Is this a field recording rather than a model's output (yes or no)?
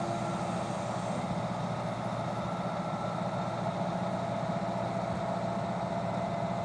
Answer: yes